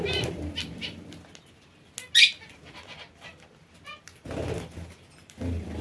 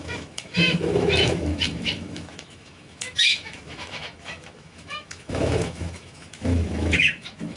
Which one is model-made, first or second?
second